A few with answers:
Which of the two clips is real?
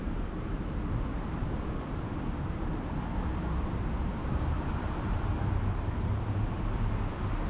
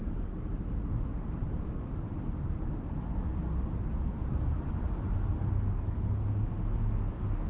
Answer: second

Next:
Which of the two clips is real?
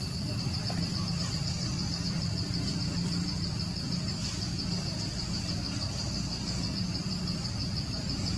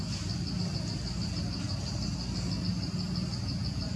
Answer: second